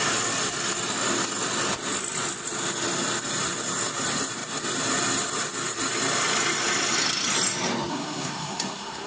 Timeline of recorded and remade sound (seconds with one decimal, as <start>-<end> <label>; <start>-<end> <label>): 0.0-7.9 recorded; 7.9-9.1 remade